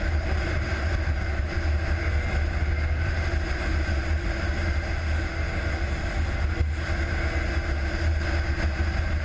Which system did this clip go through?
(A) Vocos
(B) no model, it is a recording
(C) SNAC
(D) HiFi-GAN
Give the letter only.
B